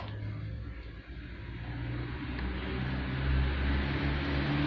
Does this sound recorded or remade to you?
recorded